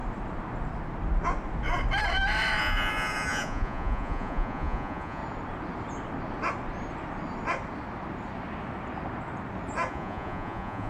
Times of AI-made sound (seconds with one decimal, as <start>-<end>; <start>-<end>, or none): 2.6-5.2; 9.9-10.9